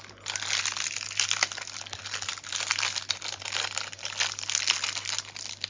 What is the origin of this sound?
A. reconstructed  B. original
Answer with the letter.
B